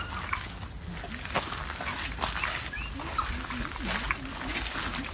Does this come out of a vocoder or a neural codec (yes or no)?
no